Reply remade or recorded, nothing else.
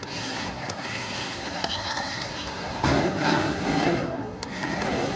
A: remade